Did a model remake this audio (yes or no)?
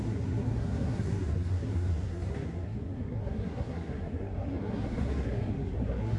yes